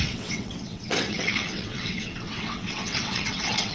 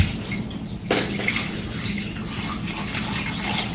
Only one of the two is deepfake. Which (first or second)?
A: first